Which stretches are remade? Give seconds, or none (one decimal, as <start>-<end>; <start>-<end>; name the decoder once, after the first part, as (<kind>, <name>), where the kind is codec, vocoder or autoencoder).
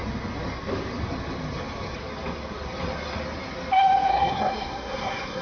4.1-5.4 (codec, SNAC)